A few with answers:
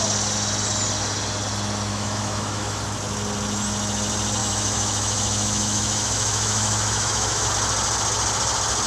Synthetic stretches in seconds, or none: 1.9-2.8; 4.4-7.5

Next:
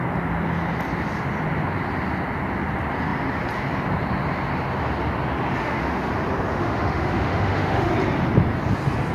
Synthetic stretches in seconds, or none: 5.6-6.1; 6.5-7.9

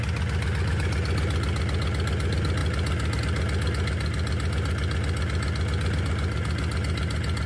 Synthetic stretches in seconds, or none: none

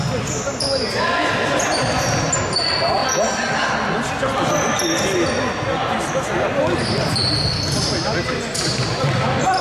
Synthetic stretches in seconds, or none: none

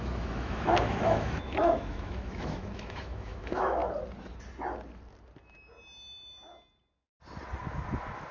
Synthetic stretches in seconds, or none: 0.0-3.8

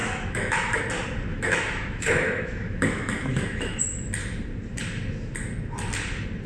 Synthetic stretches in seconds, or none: 0.0-0.8; 1.3-3.8

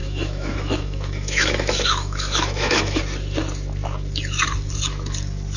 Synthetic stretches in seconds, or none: 0.0-3.0

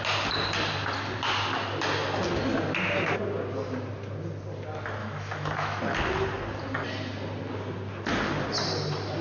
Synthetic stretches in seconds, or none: 5.0-5.8